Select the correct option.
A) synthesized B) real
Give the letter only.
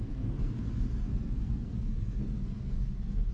A